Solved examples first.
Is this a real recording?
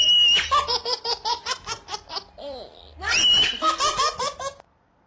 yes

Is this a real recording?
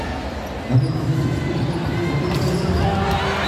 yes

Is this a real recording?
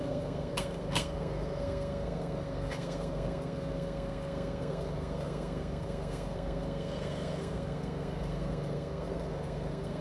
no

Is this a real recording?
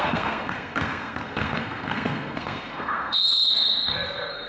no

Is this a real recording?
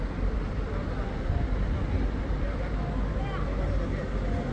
yes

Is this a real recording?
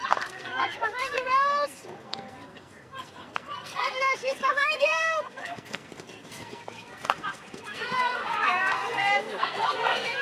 no